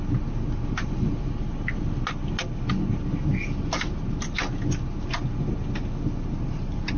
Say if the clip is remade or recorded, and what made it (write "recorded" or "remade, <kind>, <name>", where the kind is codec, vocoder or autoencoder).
recorded